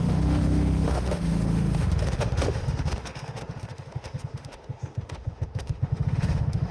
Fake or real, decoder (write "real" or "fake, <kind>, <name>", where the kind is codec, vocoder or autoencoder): fake, autoencoder, DAC-VAE